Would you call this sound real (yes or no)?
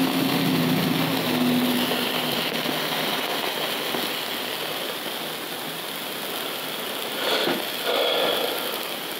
yes